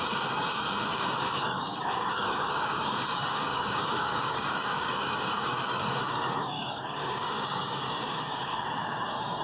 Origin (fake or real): fake